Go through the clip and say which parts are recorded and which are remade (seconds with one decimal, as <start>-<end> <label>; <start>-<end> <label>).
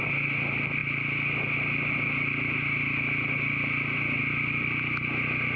0.0-5.6 recorded